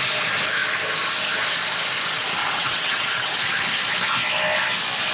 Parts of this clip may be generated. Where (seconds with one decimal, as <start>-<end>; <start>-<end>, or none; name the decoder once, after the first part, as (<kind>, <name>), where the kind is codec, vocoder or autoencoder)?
2.4-3.4 (vocoder, WaveNeXt)